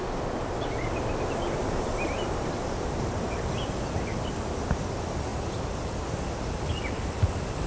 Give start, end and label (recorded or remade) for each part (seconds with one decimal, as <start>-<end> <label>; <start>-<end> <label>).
0.0-1.6 recorded; 1.6-3.5 remade; 3.5-7.7 recorded